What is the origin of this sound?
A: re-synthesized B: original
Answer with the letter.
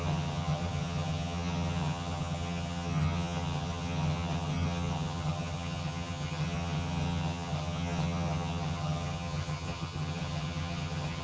A